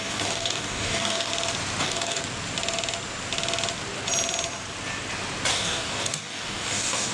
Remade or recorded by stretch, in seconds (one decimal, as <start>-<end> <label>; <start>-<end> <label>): 0.0-1.3 remade; 1.3-1.8 recorded; 1.8-2.2 remade; 2.2-5.5 recorded; 5.5-7.1 remade